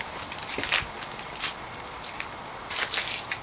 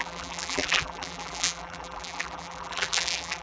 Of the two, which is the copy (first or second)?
second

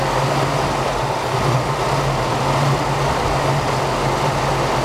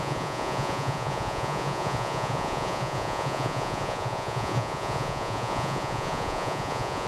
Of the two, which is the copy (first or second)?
second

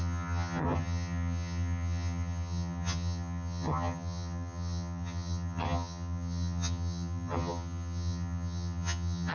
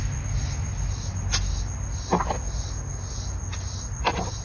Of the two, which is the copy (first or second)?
first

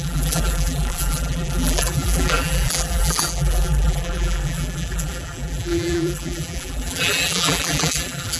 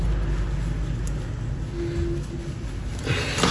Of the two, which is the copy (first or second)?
first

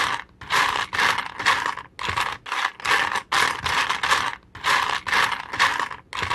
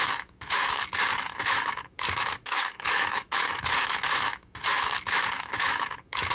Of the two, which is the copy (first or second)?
second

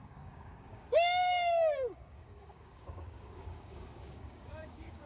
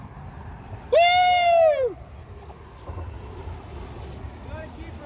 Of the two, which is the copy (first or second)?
first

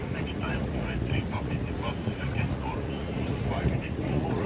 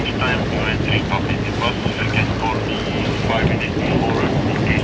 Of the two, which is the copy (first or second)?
first